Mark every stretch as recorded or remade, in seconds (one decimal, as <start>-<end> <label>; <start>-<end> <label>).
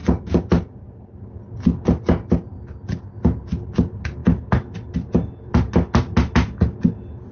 0.0-7.3 recorded